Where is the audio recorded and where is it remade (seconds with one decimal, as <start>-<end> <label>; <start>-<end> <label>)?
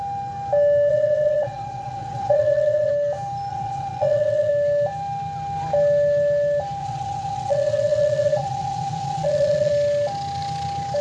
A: 0.0-0.9 recorded; 0.9-2.9 remade; 2.9-3.5 recorded; 3.5-4.5 remade; 4.5-6.8 recorded; 6.8-9.7 remade; 9.7-11.0 recorded